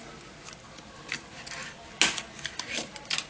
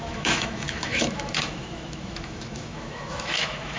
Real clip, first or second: first